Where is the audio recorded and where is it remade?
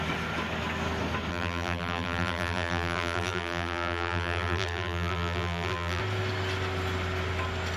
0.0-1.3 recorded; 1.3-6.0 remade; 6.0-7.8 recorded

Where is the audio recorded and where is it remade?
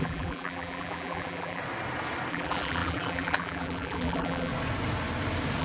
0.0-1.6 remade; 1.6-2.3 recorded; 2.3-4.5 remade; 4.5-5.6 recorded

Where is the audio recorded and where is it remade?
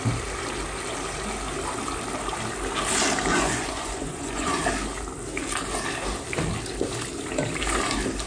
0.0-3.3 recorded; 3.3-4.6 remade; 4.6-8.3 recorded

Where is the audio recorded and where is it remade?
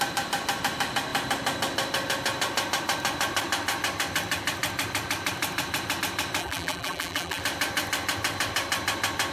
0.0-6.4 recorded; 6.4-7.4 remade; 7.4-9.3 recorded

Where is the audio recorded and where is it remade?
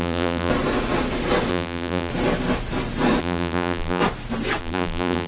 0.0-0.5 remade; 0.5-1.5 recorded; 1.5-2.1 remade; 2.1-3.2 recorded; 3.2-4.0 remade; 4.0-4.6 recorded; 4.6-5.3 remade